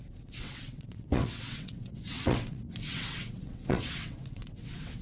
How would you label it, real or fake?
fake